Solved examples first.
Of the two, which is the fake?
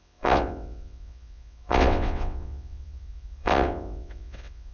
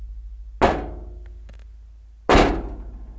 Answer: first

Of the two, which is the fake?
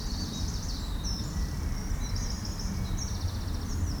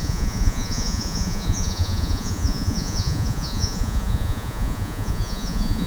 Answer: second